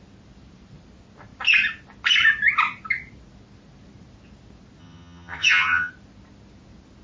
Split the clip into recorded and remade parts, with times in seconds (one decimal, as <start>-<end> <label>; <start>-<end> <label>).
0.0-4.8 recorded; 4.8-5.9 remade; 5.9-7.0 recorded